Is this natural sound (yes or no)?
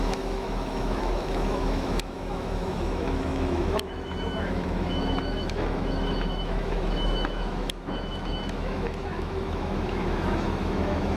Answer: no